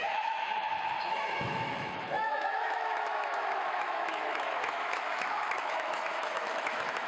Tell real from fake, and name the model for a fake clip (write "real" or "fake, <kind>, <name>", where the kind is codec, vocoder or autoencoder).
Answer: fake, autoencoder, DAC-VAE